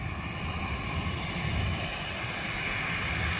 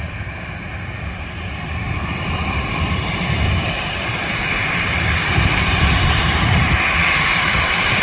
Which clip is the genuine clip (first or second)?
first